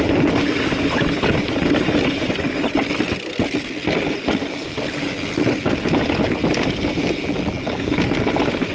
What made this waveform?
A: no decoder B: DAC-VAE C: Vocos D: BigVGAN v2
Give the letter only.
A